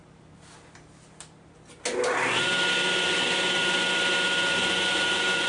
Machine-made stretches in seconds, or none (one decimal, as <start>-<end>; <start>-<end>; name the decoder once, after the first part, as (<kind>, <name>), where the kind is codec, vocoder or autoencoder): 4.6-5.5 (vocoder, Vocos)